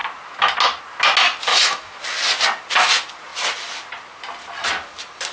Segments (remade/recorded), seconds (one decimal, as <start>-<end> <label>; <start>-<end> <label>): 0.0-1.5 recorded; 1.5-2.0 remade; 2.0-5.3 recorded

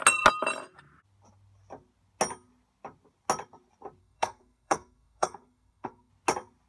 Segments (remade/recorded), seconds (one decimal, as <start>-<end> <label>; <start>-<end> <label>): 0.0-4.0 recorded; 4.0-6.1 remade; 6.1-6.7 recorded